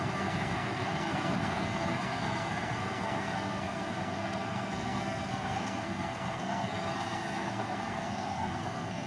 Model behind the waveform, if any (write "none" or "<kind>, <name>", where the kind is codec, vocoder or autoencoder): codec, SNAC